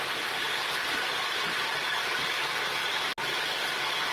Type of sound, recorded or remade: recorded